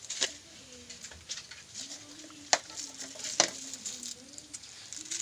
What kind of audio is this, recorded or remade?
recorded